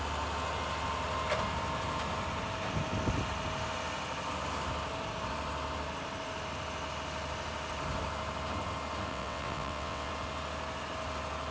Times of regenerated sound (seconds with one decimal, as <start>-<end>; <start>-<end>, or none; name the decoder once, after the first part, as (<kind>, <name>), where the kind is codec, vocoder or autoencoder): 9.1-10.1 (vocoder, WaveNeXt)